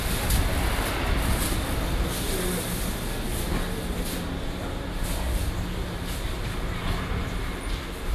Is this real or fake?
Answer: real